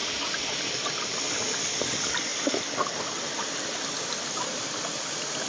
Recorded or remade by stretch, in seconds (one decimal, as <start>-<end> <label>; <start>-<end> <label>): 0.0-5.5 recorded